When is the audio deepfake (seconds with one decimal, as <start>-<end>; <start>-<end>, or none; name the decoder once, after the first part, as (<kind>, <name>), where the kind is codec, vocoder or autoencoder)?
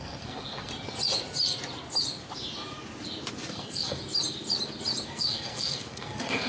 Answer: 0.0-0.7 (codec, SNAC); 3.5-4.0; 5.1-6.5